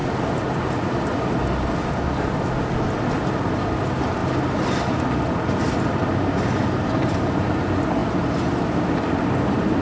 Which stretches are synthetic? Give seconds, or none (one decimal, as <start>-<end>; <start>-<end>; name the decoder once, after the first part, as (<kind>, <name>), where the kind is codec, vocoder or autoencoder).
none